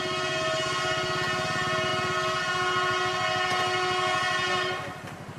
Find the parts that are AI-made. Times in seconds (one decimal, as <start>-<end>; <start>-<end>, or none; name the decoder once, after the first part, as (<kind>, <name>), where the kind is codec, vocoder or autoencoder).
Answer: none